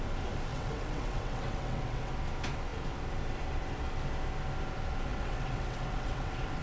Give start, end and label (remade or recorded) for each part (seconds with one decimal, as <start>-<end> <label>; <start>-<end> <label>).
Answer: 0.0-0.5 recorded; 0.5-2.1 remade; 2.1-5.1 recorded; 5.1-6.6 remade